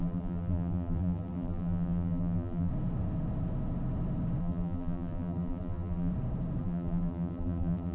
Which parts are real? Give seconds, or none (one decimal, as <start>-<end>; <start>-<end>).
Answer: 2.7-4.4; 6.1-6.6